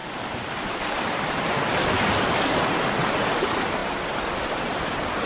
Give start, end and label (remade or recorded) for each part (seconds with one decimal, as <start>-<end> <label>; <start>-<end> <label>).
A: 0.0-3.8 recorded; 3.8-5.3 remade